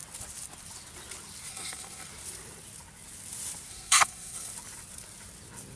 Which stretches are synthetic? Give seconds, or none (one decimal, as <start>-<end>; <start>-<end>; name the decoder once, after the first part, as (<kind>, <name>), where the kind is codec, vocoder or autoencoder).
1.5-2.1 (codec, SNAC); 3.7-4.5